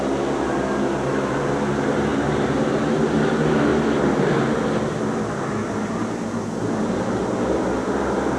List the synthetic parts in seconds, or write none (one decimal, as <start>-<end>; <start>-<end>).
none